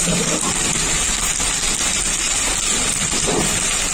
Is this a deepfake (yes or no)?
no